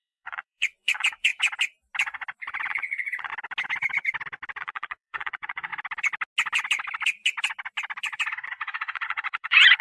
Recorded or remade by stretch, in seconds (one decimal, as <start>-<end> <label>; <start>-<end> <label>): 0.0-1.3 remade; 1.3-2.7 recorded; 2.7-3.3 remade; 3.3-4.6 recorded; 4.6-5.7 remade; 5.7-8.5 recorded; 8.5-9.8 remade